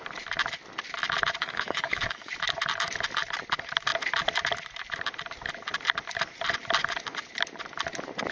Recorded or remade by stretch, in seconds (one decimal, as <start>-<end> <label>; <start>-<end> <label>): 0.0-1.4 recorded; 1.4-2.3 remade; 2.3-8.3 recorded